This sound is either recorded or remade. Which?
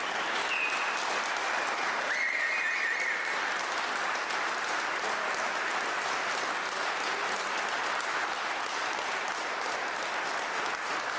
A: recorded